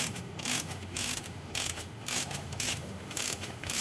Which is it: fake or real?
fake